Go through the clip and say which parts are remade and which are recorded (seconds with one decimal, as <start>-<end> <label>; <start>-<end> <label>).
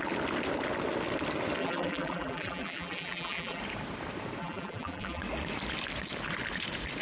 0.0-1.6 recorded; 1.6-3.6 remade; 3.6-4.4 recorded; 4.4-5.2 remade; 5.2-7.0 recorded